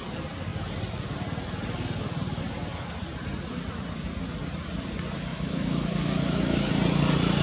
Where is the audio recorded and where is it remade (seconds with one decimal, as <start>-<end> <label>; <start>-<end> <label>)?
0.0-5.3 recorded; 5.3-6.7 remade; 6.7-7.4 recorded